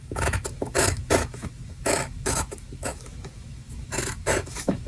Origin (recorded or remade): remade